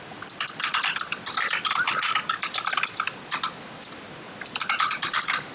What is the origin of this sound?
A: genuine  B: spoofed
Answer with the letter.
A